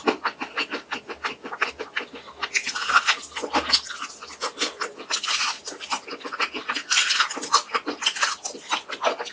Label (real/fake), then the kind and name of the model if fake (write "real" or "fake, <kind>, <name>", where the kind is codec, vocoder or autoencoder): real